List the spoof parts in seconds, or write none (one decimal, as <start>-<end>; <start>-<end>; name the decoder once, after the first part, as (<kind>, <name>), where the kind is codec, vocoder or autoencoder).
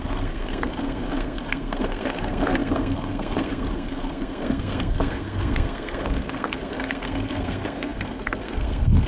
0.0-9.1 (codec, SNAC)